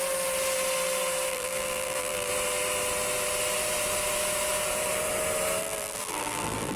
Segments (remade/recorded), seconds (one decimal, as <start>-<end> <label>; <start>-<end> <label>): 0.0-1.3 recorded; 1.3-2.3 remade; 2.3-5.6 recorded; 5.6-6.8 remade